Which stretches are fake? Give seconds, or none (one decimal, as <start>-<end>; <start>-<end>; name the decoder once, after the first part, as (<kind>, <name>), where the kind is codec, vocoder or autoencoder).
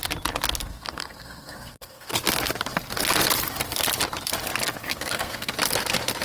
0.6-2.1 (codec, SNAC); 4.8-5.5